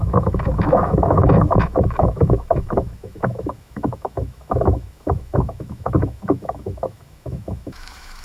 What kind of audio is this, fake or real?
fake